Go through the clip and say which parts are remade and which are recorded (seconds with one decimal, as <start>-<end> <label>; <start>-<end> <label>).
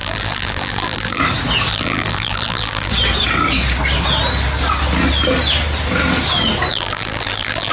0.0-1.2 remade; 1.2-1.7 recorded; 1.7-2.9 remade; 2.9-6.7 recorded; 6.7-7.7 remade